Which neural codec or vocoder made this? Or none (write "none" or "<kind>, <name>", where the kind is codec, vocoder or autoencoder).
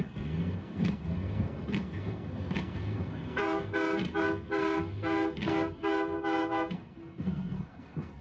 codec, SNAC